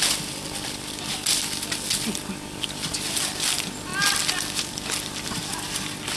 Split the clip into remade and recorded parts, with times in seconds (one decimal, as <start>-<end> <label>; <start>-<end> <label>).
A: 0.0-6.2 recorded